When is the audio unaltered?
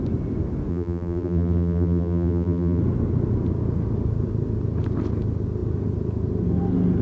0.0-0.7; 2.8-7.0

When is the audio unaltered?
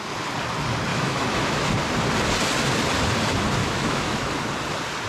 0.0-0.9; 1.7-3.6; 4.3-5.1